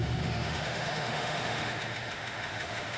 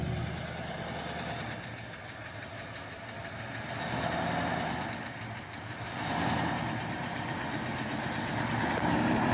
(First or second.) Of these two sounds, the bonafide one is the second